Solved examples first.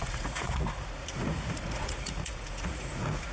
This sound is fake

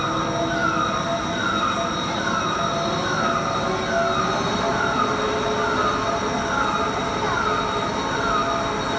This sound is real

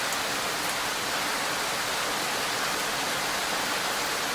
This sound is real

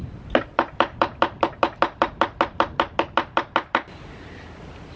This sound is real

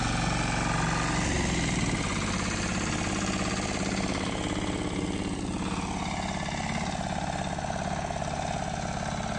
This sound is real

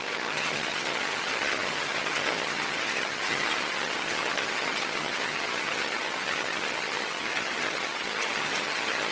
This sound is fake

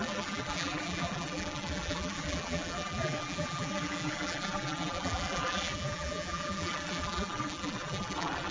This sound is fake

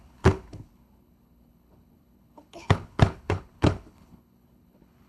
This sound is fake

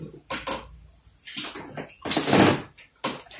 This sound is real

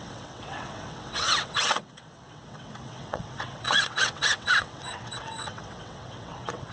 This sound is fake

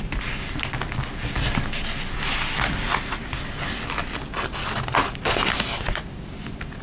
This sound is real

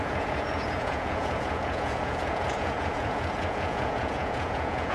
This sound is fake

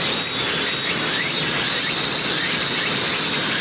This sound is real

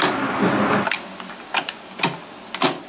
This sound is real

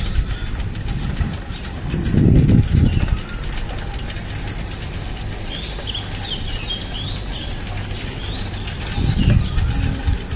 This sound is real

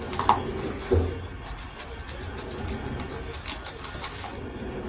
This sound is real